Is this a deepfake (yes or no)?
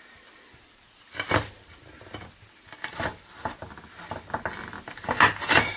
no